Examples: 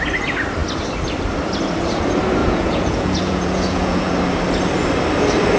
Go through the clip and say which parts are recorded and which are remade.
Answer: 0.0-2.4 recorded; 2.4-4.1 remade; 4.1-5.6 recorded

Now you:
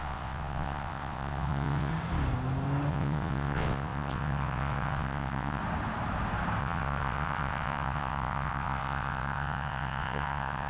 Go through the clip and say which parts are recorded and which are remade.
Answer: 0.0-1.9 remade; 1.9-2.9 recorded; 2.9-5.6 remade; 5.6-6.6 recorded; 6.6-10.7 remade

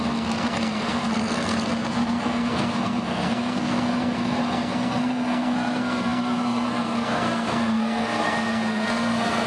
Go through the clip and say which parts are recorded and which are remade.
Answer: 0.0-9.5 remade

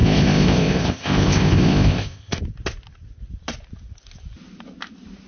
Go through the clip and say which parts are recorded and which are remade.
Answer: 0.0-2.4 remade; 2.4-5.3 recorded

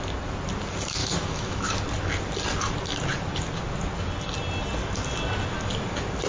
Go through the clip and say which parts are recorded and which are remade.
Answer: 0.0-1.0 recorded; 1.0-1.7 remade; 1.7-6.3 recorded

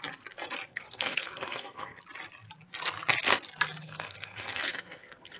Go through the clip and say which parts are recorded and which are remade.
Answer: 0.0-0.7 recorded; 0.7-2.0 remade; 2.0-3.8 recorded; 3.8-5.4 remade

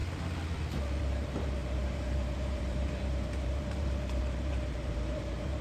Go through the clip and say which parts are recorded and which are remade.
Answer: 0.0-1.0 recorded; 1.0-5.6 remade